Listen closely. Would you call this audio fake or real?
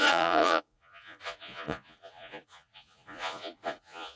fake